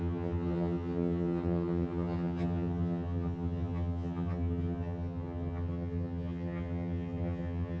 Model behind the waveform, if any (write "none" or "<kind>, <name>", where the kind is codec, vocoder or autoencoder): vocoder, HiFi-GAN